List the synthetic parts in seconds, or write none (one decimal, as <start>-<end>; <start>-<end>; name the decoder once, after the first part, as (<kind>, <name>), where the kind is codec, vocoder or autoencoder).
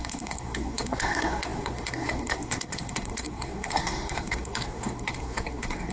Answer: 0.0-5.9 (codec, SNAC)